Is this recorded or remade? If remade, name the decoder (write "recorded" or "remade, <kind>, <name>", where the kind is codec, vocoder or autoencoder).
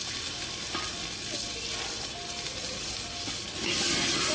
recorded